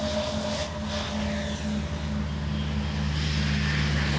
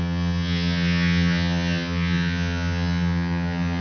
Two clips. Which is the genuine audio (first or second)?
first